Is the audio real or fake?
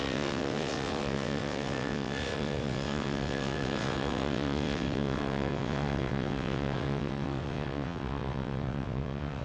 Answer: fake